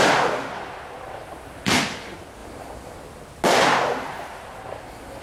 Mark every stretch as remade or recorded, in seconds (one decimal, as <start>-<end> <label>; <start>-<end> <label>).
0.0-5.2 recorded